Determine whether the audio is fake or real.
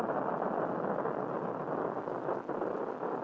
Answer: real